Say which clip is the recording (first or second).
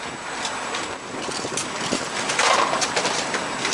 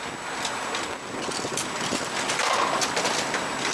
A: second